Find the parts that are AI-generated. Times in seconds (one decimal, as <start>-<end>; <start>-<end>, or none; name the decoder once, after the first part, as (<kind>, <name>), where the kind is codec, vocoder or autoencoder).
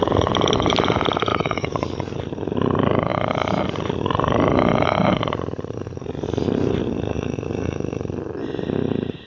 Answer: 1.3-1.8 (vocoder, BigVGAN v2)